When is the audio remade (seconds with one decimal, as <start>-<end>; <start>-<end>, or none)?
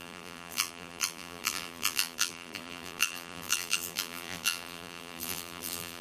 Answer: 0.0-6.0